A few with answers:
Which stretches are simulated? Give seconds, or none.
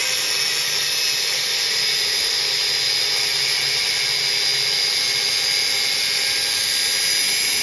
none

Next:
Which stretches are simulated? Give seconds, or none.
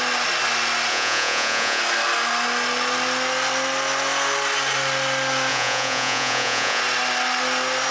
0.9-1.8 (vocoder, Vocos); 5.5-6.8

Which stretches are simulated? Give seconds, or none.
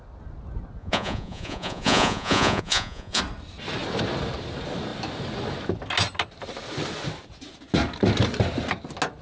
0.8-3.2 (vocoder, Vocos)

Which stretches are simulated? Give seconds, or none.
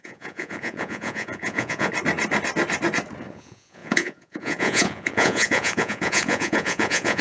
0.0-1.9 (vocoder, Vocos); 3.3-7.2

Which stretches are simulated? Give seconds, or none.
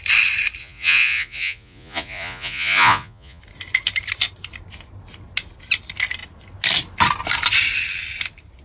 0.6-3.4 (vocoder, Vocos)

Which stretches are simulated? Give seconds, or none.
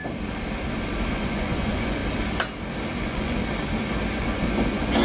1.1-2.0 (vocoder, Vocos); 3.0-3.4; 4.1-5.0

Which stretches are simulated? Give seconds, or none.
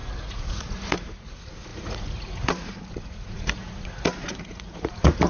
0.0-5.3 (vocoder, Vocos)